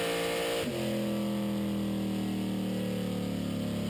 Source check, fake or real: real